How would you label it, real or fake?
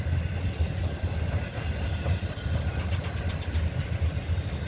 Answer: real